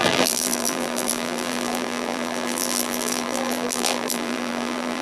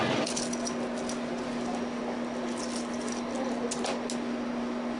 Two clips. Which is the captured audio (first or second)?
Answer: second